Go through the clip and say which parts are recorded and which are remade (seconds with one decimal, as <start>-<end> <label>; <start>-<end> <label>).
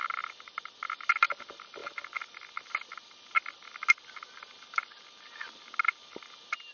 0.0-6.7 recorded